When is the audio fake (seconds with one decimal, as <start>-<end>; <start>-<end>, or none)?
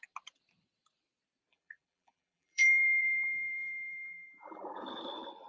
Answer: 1.5-4.8